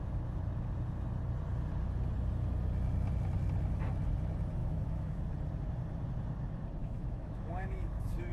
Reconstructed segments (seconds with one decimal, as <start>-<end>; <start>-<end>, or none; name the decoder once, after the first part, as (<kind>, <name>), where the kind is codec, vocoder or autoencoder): 4.6-5.2 (autoencoder, DAC-VAE); 6.8-8.3